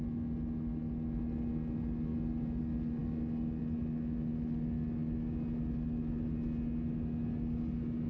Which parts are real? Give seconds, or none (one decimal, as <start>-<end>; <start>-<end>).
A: 0.0-8.1